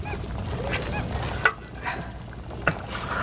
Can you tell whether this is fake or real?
real